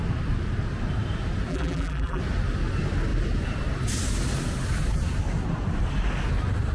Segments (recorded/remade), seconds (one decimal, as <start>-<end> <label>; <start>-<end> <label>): 0.0-1.5 recorded; 1.5-2.2 remade; 2.2-6.7 recorded